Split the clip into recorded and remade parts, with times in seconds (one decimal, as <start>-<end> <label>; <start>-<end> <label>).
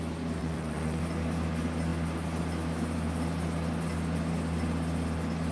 0.0-0.4 recorded; 0.4-1.0 remade; 1.0-5.5 recorded